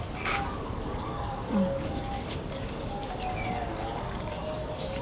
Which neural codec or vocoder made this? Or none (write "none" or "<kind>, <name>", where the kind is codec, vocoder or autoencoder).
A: codec, DAC